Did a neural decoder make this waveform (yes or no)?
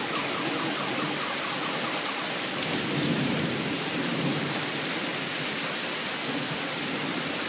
no